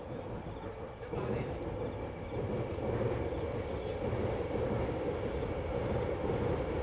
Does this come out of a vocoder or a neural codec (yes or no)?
no